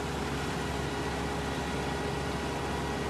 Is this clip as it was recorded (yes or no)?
yes